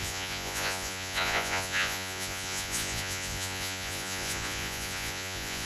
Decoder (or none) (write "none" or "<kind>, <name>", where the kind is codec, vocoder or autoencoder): vocoder, Vocos